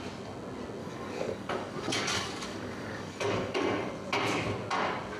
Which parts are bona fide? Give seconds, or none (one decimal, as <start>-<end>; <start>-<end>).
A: 0.0-0.8; 3.9-5.2